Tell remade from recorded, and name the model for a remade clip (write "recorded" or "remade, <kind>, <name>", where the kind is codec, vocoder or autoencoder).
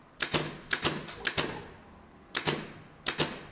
recorded